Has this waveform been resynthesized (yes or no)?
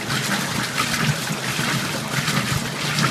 no